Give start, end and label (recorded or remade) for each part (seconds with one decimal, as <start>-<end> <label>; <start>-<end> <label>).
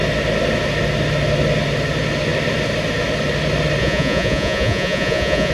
0.0-3.8 recorded; 3.8-5.5 remade